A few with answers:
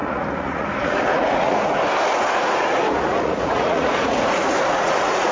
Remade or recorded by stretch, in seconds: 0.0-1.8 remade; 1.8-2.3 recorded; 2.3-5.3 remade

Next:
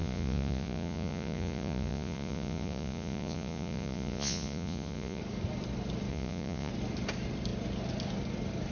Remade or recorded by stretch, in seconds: 0.0-5.2 remade; 5.2-6.1 recorded; 6.1-6.7 remade; 6.7-8.7 recorded

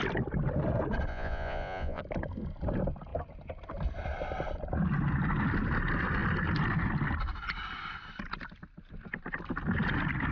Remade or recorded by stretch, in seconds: 0.0-1.1 recorded; 1.1-2.0 remade; 2.0-10.3 recorded

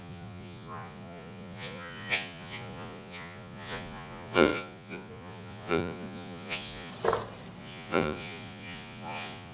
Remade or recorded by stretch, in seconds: 0.0-6.9 remade; 6.9-7.6 recorded; 7.6-9.5 remade

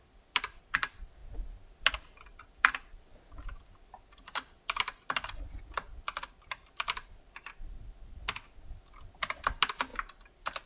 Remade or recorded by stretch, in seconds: 0.0-10.7 recorded

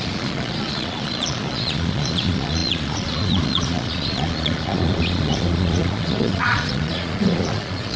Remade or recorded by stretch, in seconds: 0.0-8.0 remade